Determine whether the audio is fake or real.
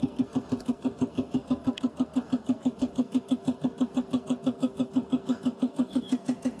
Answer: fake